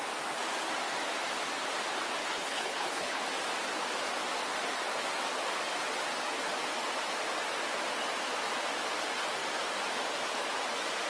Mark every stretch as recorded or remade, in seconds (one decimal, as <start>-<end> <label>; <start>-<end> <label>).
0.0-2.2 recorded; 2.2-3.2 remade; 3.2-11.1 recorded